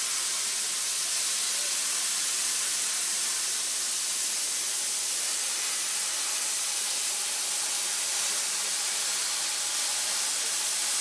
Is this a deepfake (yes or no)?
no